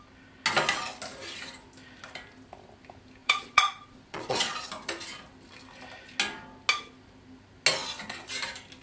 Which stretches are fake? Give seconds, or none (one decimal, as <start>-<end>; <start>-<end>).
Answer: 3.2-4.7